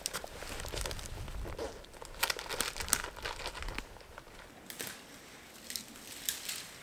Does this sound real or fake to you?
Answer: real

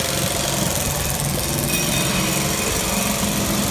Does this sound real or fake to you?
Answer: real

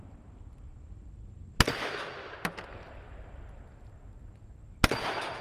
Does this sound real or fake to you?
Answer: real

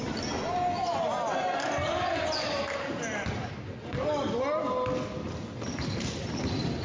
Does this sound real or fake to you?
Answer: real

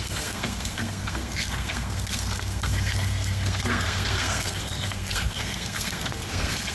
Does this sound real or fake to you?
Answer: fake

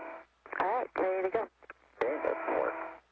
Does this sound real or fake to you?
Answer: real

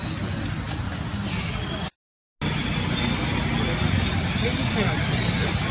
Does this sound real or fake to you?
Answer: real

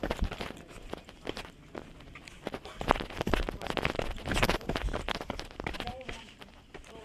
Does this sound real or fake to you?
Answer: real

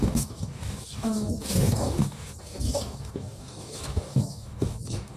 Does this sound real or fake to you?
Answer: fake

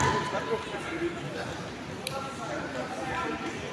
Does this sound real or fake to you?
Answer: real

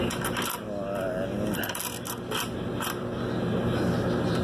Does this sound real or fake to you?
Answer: real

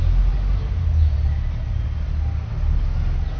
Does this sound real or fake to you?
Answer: real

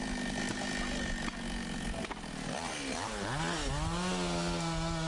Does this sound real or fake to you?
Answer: real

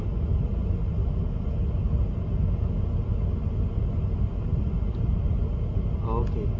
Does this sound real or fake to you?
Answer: real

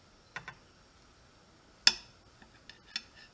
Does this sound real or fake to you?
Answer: real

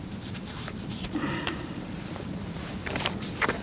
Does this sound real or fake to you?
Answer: fake